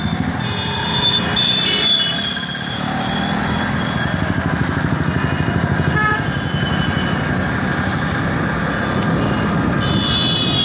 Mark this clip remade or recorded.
recorded